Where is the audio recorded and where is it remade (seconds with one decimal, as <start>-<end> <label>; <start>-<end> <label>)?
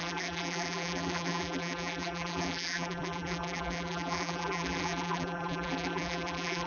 0.0-6.7 remade